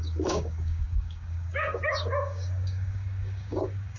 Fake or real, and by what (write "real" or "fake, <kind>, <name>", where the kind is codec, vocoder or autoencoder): fake, codec, DAC